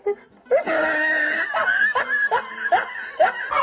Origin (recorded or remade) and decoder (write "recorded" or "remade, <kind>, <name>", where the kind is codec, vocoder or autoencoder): recorded